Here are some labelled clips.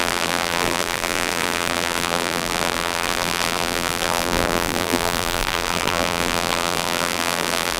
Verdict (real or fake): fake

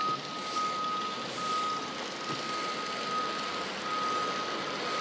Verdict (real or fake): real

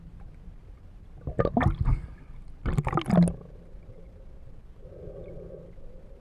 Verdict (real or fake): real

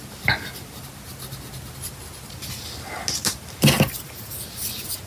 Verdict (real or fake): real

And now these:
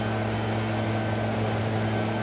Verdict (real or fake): real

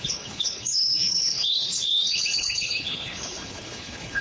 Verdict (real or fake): fake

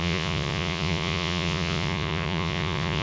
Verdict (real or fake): fake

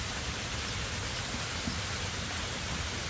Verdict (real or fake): real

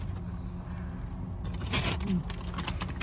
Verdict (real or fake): real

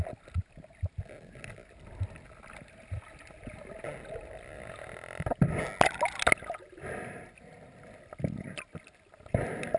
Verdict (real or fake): real